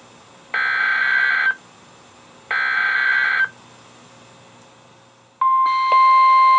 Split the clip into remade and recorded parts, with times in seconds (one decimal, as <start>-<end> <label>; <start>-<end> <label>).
0.0-6.6 recorded